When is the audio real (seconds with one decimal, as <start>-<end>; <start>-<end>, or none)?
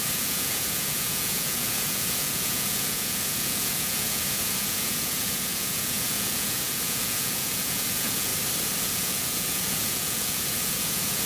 8.3-8.8